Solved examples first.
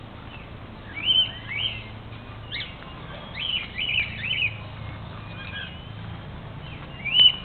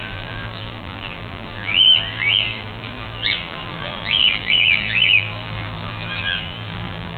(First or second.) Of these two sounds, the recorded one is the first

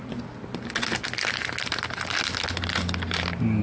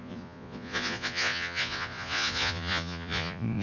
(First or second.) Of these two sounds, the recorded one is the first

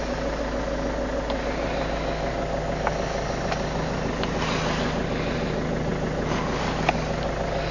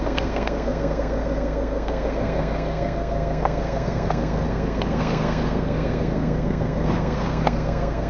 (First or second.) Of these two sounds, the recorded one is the first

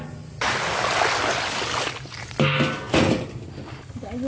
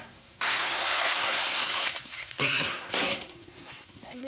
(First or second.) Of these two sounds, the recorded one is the first